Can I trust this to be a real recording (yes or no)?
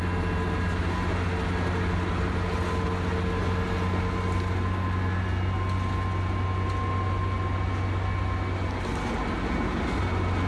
yes